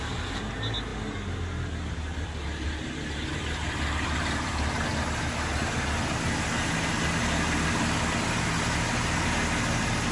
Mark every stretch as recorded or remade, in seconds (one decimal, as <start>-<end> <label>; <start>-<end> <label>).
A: 0.0-10.1 recorded